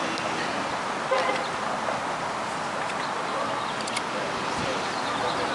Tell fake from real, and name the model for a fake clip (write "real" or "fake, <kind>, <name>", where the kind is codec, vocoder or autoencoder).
real